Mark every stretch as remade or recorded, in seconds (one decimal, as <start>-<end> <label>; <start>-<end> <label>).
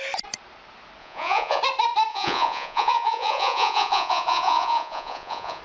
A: 0.0-1.0 recorded; 1.0-1.6 remade; 1.6-2.1 recorded; 2.1-5.6 remade